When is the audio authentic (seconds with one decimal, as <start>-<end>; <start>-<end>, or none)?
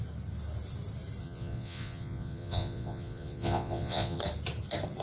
0.0-1.2; 4.2-5.0